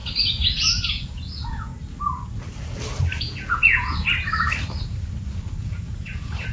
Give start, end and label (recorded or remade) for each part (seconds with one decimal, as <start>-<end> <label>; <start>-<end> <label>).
0.0-0.9 recorded; 0.9-1.7 remade; 1.7-3.2 recorded; 3.2-4.0 remade; 4.0-5.6 recorded; 5.6-6.5 remade

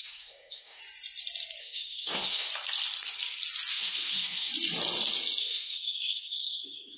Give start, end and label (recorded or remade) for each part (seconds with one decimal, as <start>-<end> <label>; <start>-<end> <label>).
0.0-0.8 remade; 0.8-1.6 recorded; 1.6-2.5 remade; 2.5-3.7 recorded; 3.7-4.5 remade; 4.5-5.4 recorded; 5.4-7.0 remade

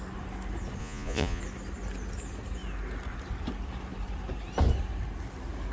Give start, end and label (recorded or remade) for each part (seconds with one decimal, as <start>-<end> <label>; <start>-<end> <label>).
0.0-0.8 recorded; 0.8-1.4 remade; 1.4-5.7 recorded

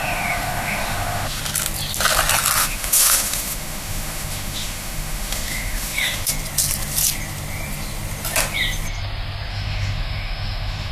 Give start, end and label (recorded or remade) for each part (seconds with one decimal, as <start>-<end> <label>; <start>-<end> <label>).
0.0-1.4 remade; 1.4-2.6 recorded; 2.6-6.3 remade; 6.3-9.5 recorded; 9.5-10.9 remade